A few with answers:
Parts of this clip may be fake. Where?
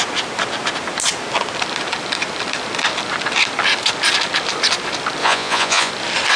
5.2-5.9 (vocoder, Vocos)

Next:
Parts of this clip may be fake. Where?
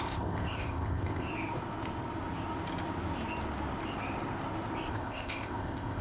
0.0-1.3 (codec, ZipCodec); 4.9-6.0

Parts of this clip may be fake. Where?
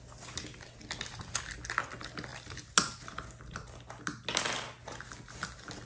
none